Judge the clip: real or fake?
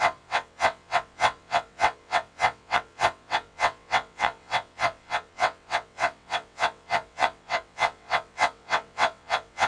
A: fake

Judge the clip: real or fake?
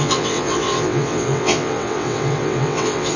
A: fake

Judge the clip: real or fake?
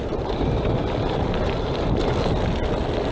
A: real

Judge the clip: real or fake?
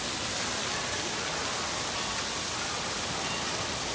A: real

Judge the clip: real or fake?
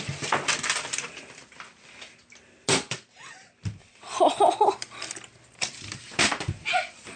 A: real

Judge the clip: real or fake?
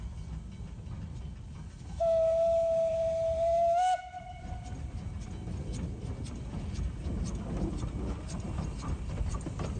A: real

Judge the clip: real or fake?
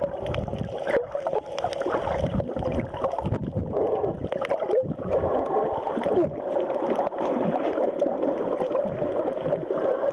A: real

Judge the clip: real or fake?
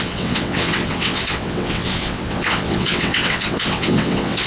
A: fake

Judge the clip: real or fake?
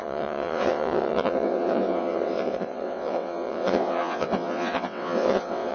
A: fake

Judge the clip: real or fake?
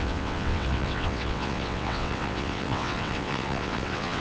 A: fake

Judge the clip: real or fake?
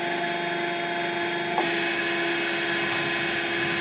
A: real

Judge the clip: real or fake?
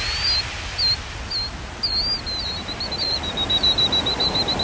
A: real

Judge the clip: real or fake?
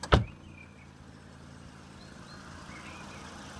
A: real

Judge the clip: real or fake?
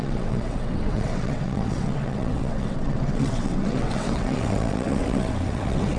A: fake